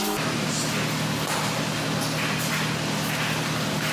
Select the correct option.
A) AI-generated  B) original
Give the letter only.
B